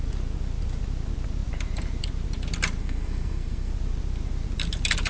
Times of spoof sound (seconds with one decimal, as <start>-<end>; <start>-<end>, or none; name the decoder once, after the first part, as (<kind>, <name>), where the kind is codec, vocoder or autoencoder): 2.8-3.7 (codec, SNAC)